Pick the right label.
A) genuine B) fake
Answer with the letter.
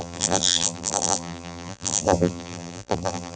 B